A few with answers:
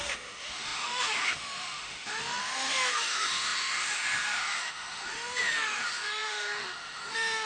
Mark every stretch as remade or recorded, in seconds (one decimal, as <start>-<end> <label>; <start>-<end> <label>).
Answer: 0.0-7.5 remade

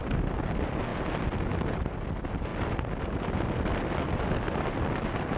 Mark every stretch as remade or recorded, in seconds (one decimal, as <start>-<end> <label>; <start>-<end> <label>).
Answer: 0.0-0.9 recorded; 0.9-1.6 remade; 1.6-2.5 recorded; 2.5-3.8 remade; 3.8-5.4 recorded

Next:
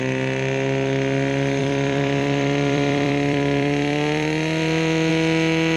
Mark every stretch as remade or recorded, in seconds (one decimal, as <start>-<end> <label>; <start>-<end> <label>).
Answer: 0.0-1.6 recorded; 1.6-5.1 remade; 5.1-5.8 recorded

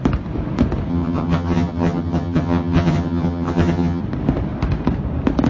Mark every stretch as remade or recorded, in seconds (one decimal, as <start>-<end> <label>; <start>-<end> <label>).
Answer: 0.0-0.9 recorded; 0.9-4.0 remade; 4.0-5.5 recorded